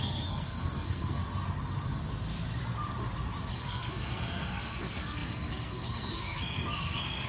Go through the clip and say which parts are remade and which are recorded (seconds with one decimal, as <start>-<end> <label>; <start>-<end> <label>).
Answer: 0.0-1.2 remade; 1.2-3.5 recorded; 3.5-7.3 remade